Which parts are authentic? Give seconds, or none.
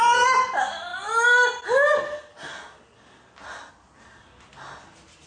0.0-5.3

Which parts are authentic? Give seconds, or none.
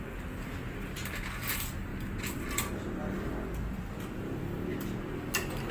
0.0-4.7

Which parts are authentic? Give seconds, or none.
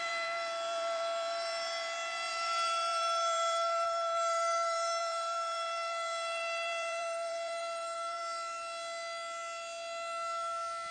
8.2-10.9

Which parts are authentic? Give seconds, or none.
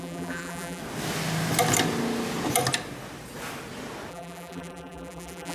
0.8-4.1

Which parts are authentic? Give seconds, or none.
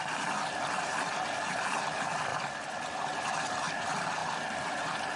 0.0-2.3; 3.3-5.2